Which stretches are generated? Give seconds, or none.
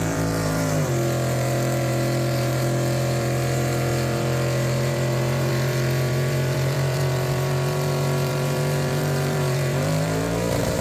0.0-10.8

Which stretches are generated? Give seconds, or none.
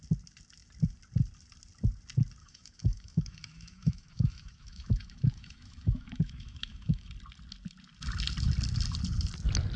2.4-7.1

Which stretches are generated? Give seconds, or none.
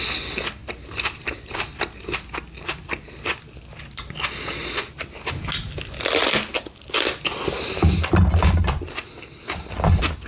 none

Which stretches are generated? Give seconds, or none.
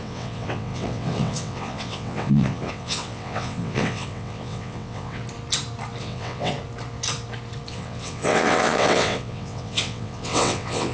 0.0-5.2; 6.0-6.5; 7.7-10.9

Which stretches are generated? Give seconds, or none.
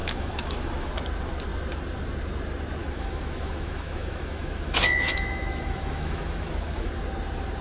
0.0-0.9; 2.8-6.9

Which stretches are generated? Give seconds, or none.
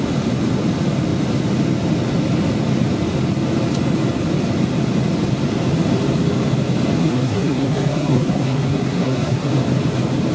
7.0-9.5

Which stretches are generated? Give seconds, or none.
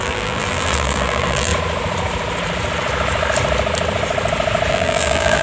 0.0-1.5; 4.7-5.4